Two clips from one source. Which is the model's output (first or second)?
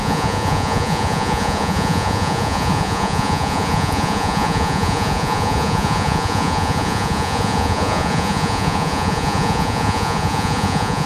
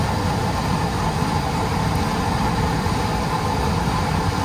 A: first